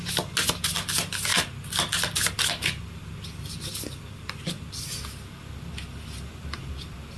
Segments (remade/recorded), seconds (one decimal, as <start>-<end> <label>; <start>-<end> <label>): 0.0-7.2 recorded

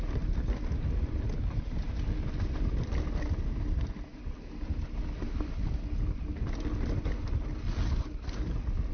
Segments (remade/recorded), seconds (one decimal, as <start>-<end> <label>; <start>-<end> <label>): 0.0-8.9 recorded